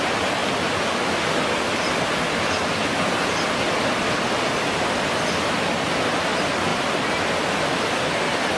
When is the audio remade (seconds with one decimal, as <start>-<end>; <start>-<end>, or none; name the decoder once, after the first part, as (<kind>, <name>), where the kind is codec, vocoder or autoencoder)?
none